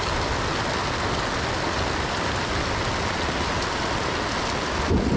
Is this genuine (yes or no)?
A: yes